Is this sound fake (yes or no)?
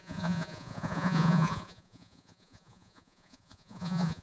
yes